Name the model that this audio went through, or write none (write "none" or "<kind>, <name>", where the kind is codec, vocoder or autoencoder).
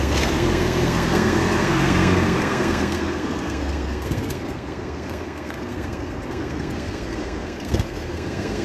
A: codec, SNAC